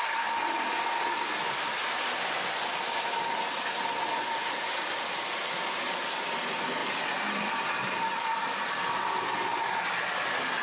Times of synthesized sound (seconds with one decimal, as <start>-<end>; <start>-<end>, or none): none